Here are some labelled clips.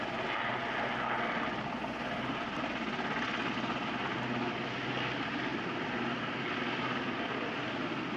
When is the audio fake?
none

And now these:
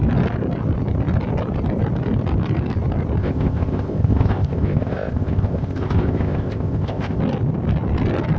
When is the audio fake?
3.2-7.2 (codec, ZipCodec)

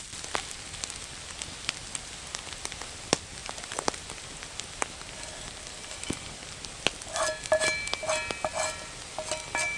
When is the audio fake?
3.4-4.8 (vocoder, BigVGAN v2)